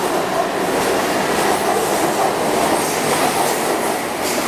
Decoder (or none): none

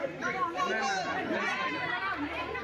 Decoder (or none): none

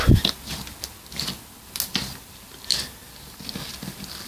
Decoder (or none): none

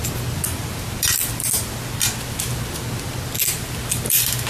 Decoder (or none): none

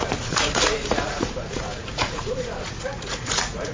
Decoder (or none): vocoder, Vocos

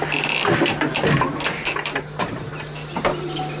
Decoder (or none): none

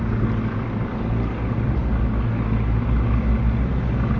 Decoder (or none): none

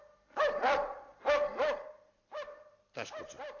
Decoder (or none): none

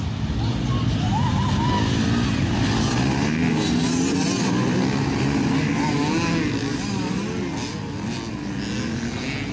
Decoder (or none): none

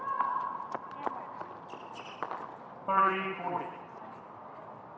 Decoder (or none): none